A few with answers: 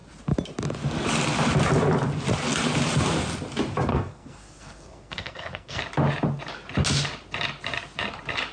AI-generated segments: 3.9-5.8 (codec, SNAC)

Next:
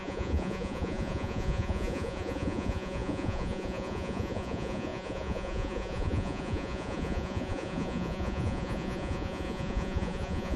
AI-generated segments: 0.0-10.6 (vocoder, Vocos)

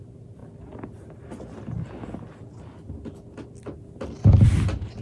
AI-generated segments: none